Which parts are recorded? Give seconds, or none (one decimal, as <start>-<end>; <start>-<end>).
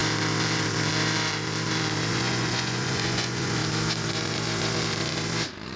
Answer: 0.0-2.1; 3.6-5.8